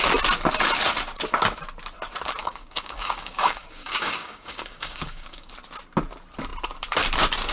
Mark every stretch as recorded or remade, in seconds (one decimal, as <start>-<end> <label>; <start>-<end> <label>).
0.0-2.4 recorded; 2.4-5.5 remade; 5.5-7.5 recorded